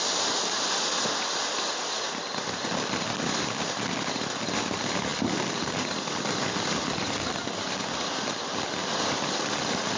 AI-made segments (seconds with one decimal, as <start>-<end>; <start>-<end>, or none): none